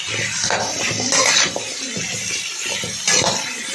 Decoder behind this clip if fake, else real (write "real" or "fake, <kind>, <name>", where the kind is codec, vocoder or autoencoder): real